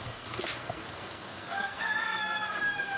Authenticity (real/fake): fake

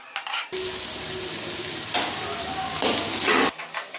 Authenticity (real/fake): real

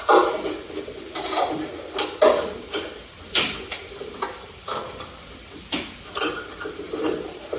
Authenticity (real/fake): real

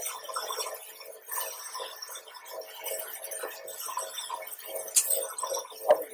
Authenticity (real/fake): real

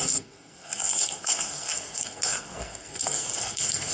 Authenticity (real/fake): fake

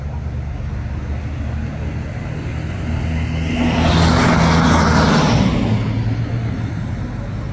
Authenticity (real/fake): real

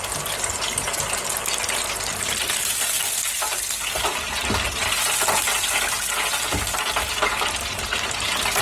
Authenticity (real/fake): real